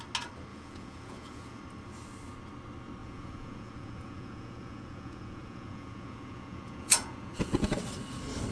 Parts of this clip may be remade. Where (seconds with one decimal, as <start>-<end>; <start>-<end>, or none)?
0.5-1.6; 3.0-7.8